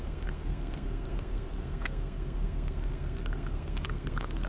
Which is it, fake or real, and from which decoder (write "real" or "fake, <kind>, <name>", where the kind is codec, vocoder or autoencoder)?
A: fake, codec, SNAC